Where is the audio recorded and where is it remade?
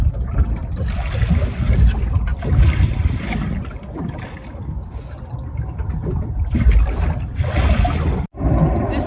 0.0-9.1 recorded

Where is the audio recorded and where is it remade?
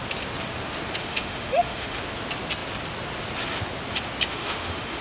0.0-1.0 recorded; 1.0-2.0 remade; 2.0-4.3 recorded; 4.3-5.0 remade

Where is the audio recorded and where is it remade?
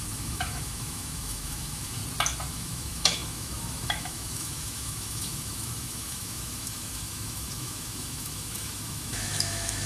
0.0-2.0 remade; 2.0-2.5 recorded; 2.5-9.9 remade